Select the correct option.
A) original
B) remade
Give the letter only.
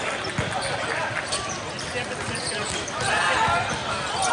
A